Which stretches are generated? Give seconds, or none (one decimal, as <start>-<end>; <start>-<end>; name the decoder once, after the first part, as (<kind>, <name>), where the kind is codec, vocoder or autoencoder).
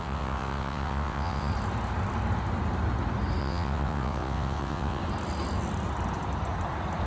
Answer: 0.0-1.5 (vocoder, WaveNeXt); 3.4-5.0